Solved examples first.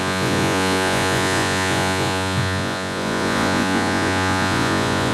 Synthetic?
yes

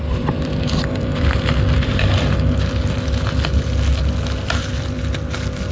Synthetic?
no